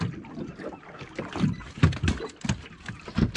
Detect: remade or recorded recorded